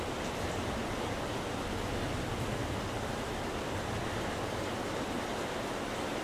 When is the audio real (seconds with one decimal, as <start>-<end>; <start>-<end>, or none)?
0.0-0.8; 1.6-2.6; 4.5-5.3